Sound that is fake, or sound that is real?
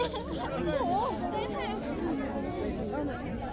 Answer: real